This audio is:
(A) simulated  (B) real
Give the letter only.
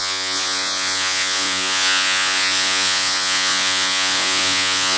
A